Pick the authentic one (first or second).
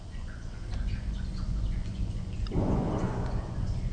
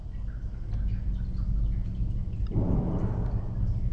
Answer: second